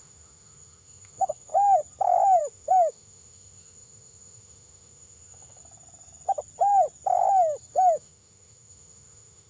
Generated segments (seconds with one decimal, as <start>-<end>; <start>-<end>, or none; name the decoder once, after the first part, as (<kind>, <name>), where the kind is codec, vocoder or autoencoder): 0.0-1.5 (autoencoder, DAC-VAE); 2.4-5.6; 7.7-9.5